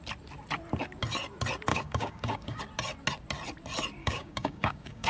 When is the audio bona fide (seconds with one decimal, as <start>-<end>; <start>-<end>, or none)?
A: 0.0-1.7; 2.6-4.0

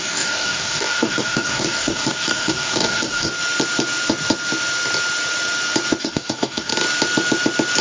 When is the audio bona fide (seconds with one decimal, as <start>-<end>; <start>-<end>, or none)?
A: 3.3-6.0; 6.7-7.8

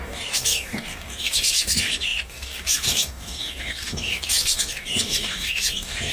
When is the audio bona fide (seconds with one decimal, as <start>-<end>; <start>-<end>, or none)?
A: none